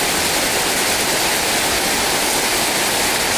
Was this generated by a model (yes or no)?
no